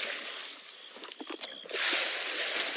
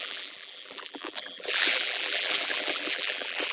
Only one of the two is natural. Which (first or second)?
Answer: first